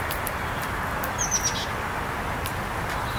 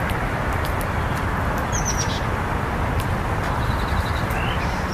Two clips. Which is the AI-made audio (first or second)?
second